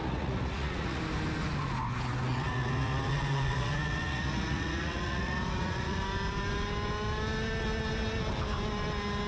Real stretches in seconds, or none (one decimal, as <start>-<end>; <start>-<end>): 1.0-2.3; 6.0-9.3